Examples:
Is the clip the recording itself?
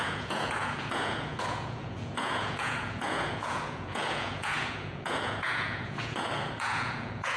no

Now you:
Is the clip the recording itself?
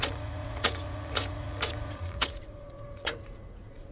no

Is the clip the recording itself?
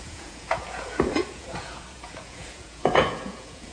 no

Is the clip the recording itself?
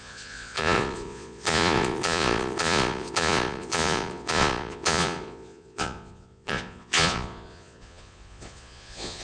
no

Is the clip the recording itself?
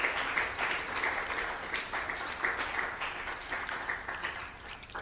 yes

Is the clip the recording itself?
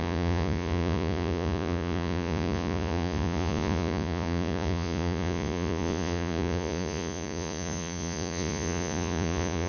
no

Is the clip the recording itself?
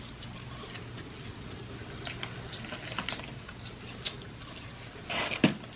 yes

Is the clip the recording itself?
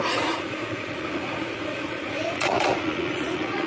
no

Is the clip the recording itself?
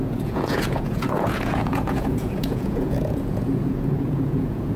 no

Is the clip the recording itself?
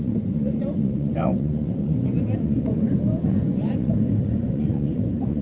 no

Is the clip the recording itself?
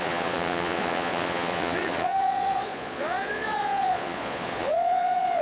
no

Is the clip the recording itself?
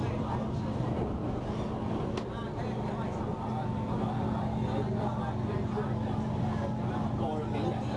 yes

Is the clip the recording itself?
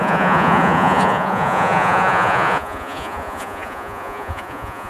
no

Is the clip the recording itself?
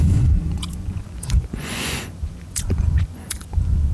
no